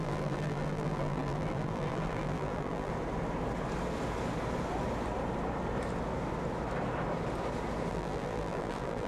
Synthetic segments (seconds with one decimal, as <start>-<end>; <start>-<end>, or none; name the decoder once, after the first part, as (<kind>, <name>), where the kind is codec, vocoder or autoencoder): 0.0-2.9 (vocoder, BigVGAN v2); 7.9-9.1